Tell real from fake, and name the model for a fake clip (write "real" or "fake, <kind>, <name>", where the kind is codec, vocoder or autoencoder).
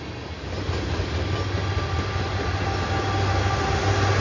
real